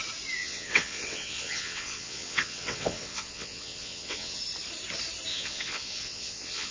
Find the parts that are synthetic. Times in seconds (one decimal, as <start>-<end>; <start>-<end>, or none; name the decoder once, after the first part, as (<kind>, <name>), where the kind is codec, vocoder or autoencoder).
0.4-4.4 (vocoder, WaveNeXt); 5.3-6.7